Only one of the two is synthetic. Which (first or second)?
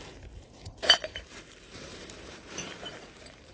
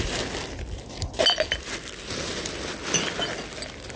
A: first